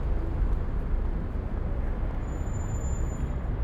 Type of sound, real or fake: real